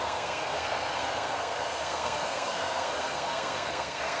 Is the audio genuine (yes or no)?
no